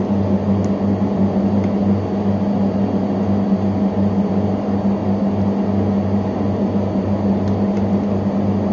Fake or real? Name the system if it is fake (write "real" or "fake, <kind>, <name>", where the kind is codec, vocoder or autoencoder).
real